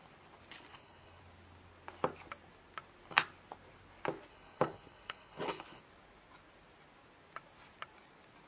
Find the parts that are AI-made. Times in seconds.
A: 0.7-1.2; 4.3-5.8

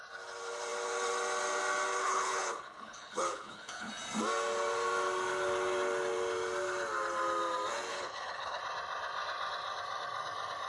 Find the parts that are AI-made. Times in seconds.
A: 2.0-3.9; 7.9-8.6

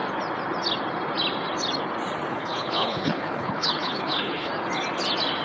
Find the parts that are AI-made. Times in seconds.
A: 2.3-4.5

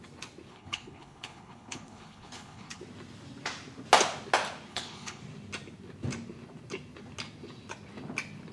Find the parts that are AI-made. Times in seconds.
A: 0.5-2.8; 4.7-5.2

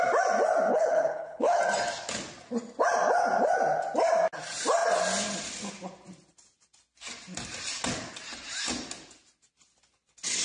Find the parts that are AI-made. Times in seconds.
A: 0.7-1.6

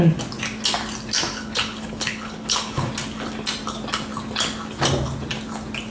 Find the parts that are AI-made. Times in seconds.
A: 1.3-2.9

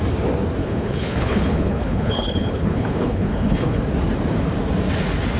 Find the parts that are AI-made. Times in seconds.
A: 0.6-3.8